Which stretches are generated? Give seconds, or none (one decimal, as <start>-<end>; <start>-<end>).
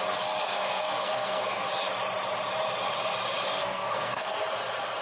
0.4-1.6; 3.5-4.4